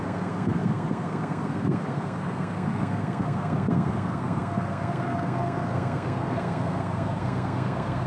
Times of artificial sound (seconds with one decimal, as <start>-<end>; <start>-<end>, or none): 0.0-8.1